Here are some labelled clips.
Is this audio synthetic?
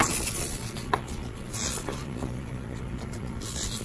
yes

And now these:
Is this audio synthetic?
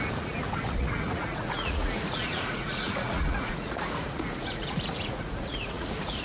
yes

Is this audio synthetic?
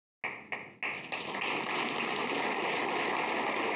no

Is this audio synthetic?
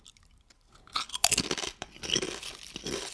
no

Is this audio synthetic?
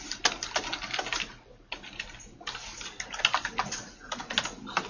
no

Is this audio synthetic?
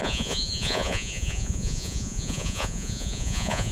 yes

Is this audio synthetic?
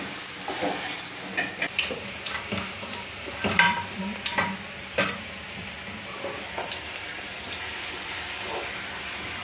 no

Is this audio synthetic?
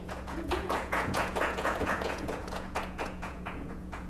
yes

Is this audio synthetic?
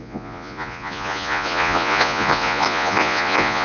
yes